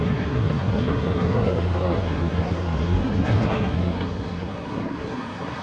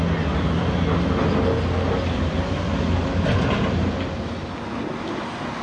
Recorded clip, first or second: second